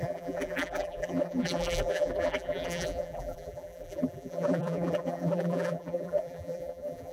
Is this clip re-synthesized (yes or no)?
yes